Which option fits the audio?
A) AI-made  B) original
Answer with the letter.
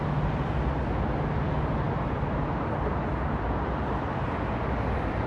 B